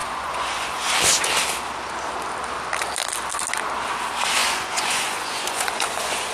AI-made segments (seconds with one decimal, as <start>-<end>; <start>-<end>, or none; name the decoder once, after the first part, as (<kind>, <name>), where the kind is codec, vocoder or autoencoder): 0.0-0.9 (vocoder, Vocos); 4.4-6.3